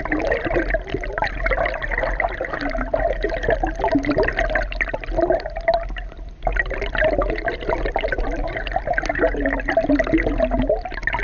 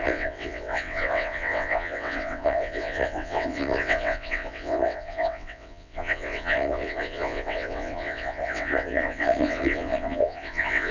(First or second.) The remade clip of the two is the second